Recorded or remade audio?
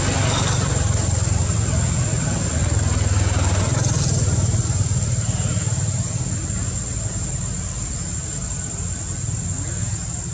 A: recorded